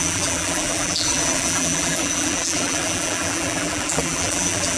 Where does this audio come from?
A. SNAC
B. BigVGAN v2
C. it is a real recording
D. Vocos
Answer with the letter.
B